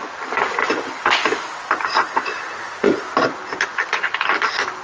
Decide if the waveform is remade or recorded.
recorded